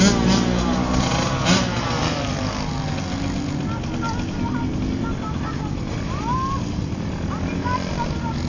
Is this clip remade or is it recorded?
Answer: recorded